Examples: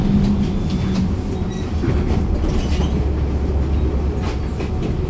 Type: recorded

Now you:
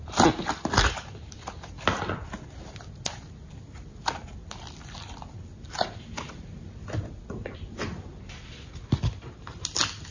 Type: recorded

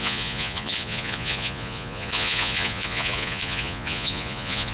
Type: remade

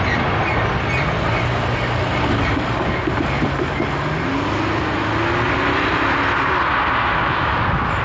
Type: recorded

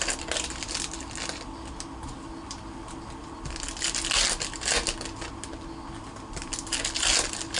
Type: recorded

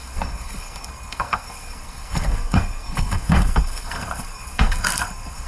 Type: remade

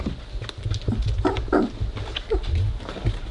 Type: recorded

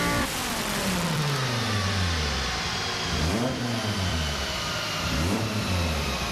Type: remade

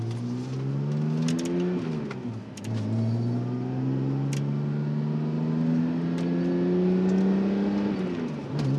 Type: recorded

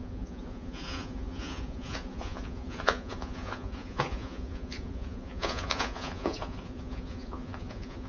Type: remade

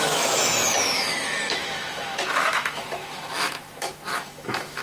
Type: remade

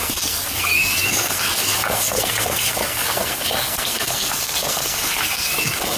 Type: remade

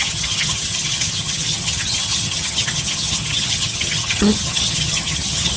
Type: remade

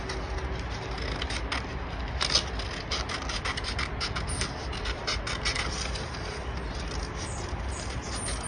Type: recorded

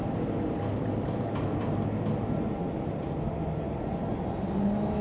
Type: recorded